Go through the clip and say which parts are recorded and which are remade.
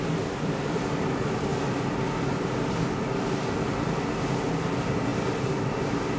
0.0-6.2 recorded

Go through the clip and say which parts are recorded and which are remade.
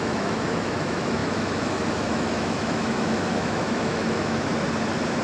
0.0-4.5 remade; 4.5-5.2 recorded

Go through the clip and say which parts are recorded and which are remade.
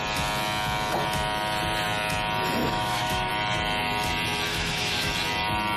0.0-2.6 recorded; 2.6-3.3 remade; 3.3-4.5 recorded; 4.5-5.1 remade; 5.1-5.8 recorded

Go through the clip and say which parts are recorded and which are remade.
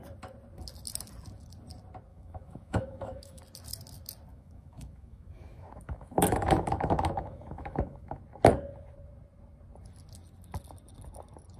0.0-2.1 recorded; 2.1-3.4 remade; 3.4-4.3 recorded; 4.3-8.2 remade; 8.2-11.6 recorded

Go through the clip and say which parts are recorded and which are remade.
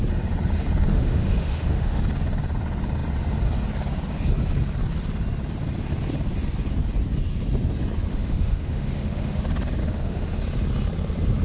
0.0-0.9 recorded; 0.9-2.0 remade; 2.0-8.1 recorded; 8.1-9.4 remade; 9.4-9.8 recorded; 9.8-10.4 remade; 10.4-11.4 recorded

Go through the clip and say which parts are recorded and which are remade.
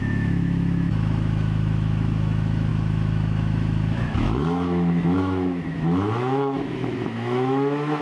0.0-8.0 remade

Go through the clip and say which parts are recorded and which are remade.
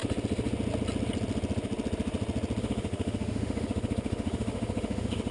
0.0-2.6 recorded; 2.6-5.3 remade